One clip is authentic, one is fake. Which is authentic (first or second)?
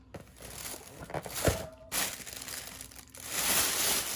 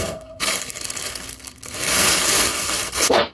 first